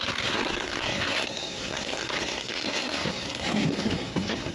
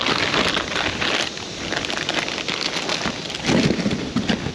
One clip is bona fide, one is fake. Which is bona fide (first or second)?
second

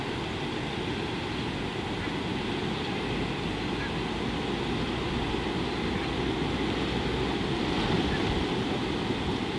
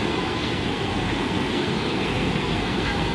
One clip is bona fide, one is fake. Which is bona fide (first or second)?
first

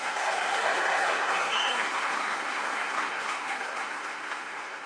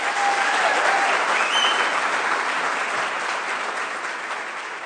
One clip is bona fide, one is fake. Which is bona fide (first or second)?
second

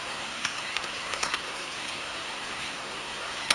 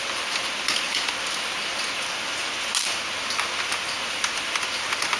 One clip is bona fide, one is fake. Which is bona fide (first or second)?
second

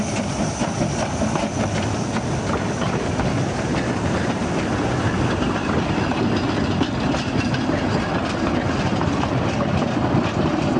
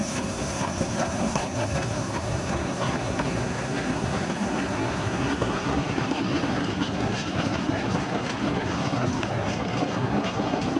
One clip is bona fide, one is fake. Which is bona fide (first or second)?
first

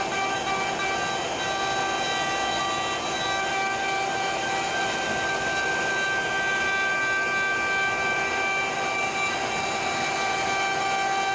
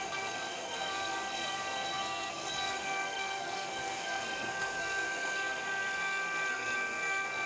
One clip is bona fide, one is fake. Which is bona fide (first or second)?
first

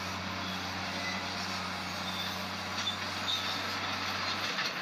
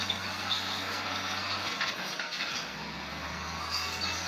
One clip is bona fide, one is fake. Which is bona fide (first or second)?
first